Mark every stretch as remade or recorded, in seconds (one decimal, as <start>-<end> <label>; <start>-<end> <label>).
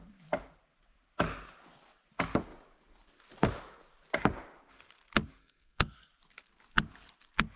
0.0-5.4 recorded; 5.4-6.1 remade; 6.1-7.6 recorded